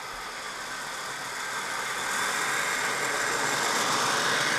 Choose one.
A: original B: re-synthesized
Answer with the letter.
A